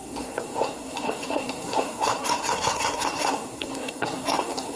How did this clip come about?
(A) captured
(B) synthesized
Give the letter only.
B